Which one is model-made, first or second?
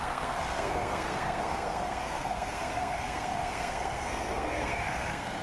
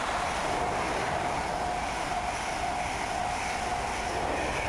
first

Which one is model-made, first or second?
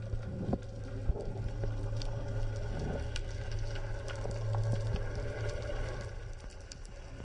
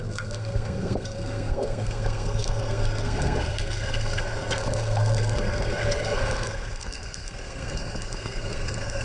second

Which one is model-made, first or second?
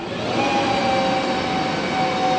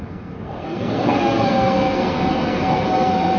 second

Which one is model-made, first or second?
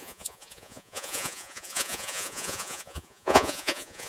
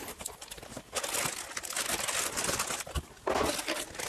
first